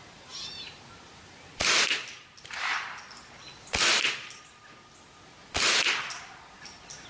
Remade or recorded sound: recorded